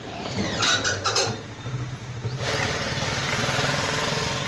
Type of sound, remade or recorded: remade